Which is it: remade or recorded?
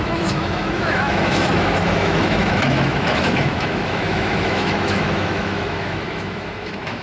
remade